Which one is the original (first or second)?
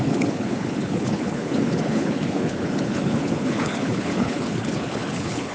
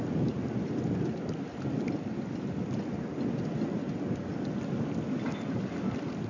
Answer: second